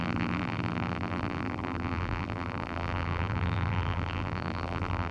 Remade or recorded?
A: remade